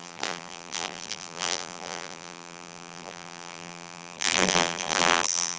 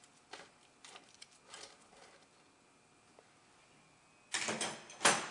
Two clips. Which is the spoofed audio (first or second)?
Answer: first